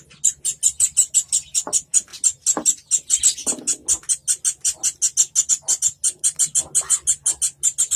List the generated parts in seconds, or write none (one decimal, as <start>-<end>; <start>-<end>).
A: none